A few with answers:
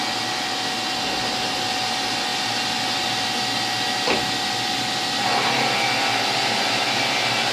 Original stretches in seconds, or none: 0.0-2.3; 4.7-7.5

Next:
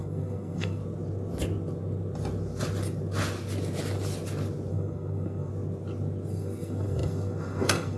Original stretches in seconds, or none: 0.8-4.7; 5.5-6.3

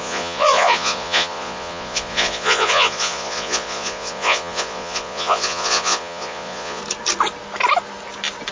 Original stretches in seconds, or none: 6.8-8.5

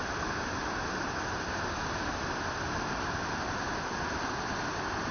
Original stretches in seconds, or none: 0.0-5.1

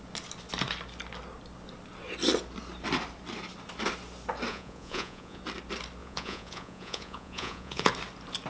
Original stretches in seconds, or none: 0.0-4.5; 5.4-6.0; 7.9-8.5

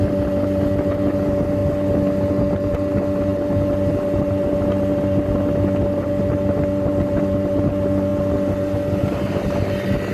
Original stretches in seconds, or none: 0.0-10.1

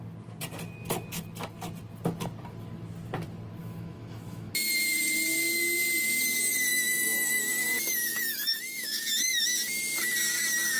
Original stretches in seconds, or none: 0.0-3.6; 4.5-6.7; 7.4-8.1; 9.4-10.8